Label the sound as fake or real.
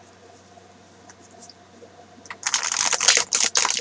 real